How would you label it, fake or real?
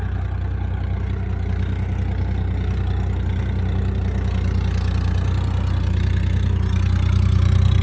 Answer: real